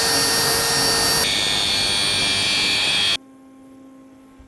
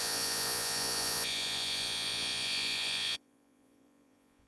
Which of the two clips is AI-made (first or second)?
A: second